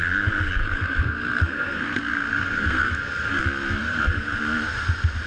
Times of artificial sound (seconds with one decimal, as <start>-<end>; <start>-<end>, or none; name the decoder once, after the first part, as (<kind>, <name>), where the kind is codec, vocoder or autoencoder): 0.6-3.4 (codec, SNAC); 3.8-4.4